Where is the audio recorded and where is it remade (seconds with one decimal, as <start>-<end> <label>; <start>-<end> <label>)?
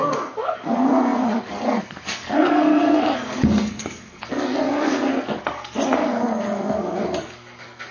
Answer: 0.0-7.9 remade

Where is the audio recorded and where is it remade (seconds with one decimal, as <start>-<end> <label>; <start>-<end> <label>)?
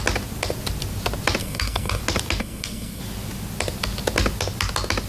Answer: 0.0-1.4 recorded; 1.4-2.0 remade; 2.0-2.4 recorded; 2.4-3.0 remade; 3.0-5.1 recorded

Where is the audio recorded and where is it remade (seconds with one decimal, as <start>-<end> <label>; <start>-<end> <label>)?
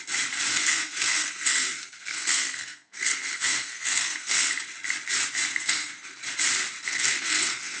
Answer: 0.0-0.5 recorded; 0.5-4.5 remade; 4.5-5.5 recorded; 5.5-6.2 remade; 6.2-6.9 recorded; 6.9-7.8 remade